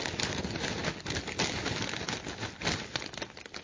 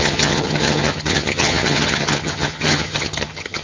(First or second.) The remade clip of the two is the second